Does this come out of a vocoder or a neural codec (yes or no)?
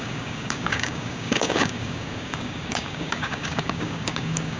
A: yes